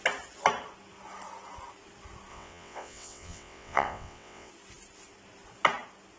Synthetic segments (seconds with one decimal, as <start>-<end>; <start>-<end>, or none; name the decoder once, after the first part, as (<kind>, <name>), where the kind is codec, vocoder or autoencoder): 2.3-4.5 (vocoder, WaveNeXt)